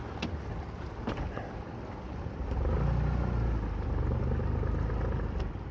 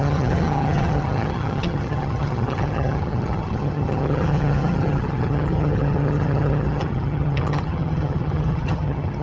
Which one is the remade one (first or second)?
second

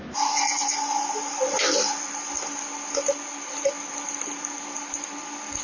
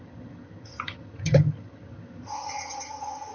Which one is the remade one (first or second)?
second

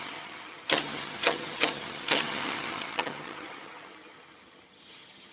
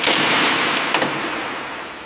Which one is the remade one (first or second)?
first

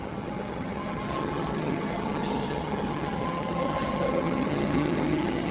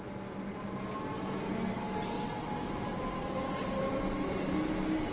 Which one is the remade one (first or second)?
first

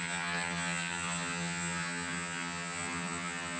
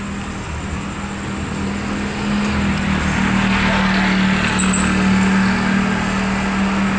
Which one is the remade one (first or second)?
first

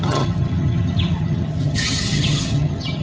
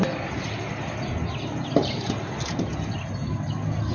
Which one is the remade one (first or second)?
first